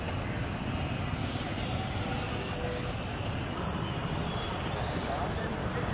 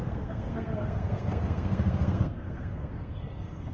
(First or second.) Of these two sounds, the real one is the first